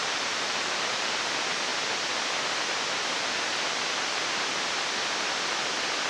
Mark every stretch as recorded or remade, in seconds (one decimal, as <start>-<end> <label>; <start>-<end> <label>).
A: 0.0-1.1 remade; 1.1-6.1 recorded